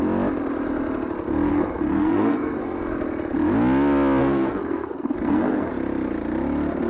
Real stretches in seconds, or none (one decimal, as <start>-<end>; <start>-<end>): 0.0-1.5; 2.6-4.2; 5.7-6.9